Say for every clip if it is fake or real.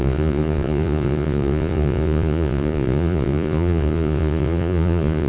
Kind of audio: fake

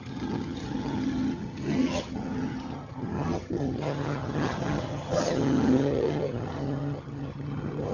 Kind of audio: fake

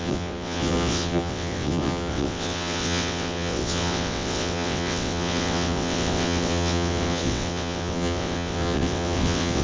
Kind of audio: fake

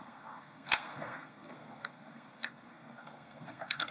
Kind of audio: fake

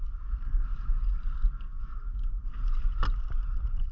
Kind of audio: real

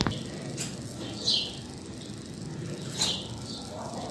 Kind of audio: real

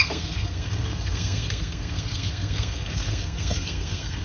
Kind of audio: fake